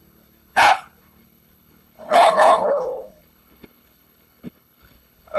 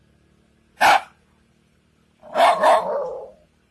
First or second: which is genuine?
second